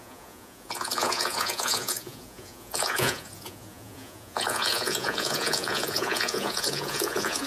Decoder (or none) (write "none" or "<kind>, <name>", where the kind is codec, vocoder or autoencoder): vocoder, Vocos